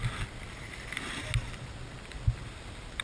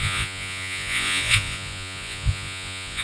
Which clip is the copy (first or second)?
second